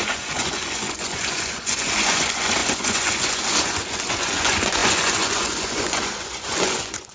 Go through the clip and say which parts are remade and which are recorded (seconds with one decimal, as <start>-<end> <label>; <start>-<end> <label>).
0.0-7.1 remade